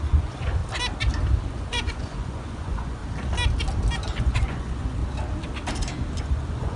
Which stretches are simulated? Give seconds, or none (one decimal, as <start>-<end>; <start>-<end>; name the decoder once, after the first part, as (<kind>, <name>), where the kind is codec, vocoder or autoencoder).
0.0-0.6 (vocoder, Vocos); 1.5-3.0; 4.2-5.0; 6.2-6.8